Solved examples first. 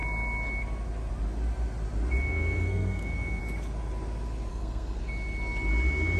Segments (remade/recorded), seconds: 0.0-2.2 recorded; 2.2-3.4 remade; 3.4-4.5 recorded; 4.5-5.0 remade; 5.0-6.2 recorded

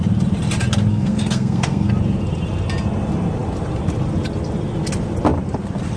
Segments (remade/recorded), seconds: 0.0-0.9 recorded; 0.9-1.9 remade; 1.9-6.0 recorded